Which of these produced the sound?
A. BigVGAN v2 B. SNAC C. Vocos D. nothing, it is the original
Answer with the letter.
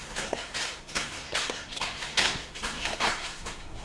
B